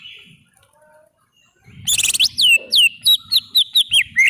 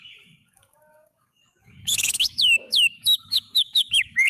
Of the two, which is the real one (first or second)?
first